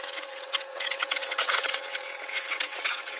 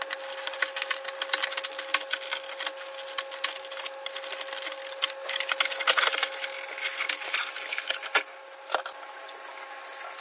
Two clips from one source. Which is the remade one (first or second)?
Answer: first